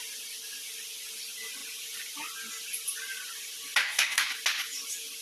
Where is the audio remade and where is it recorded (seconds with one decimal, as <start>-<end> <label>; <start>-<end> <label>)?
0.0-3.8 recorded; 3.8-4.3 remade; 4.3-5.2 recorded